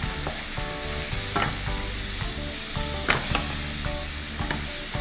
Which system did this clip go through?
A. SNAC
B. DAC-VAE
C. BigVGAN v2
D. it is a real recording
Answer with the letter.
D